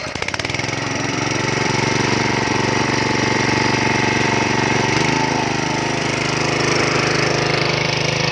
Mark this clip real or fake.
fake